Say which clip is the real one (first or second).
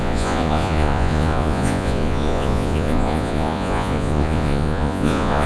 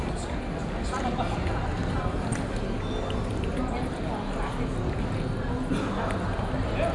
second